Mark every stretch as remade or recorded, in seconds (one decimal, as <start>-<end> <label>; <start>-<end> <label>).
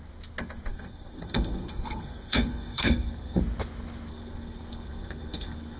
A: 0.0-0.7 recorded; 0.7-3.4 remade; 3.4-4.1 recorded; 4.1-5.8 remade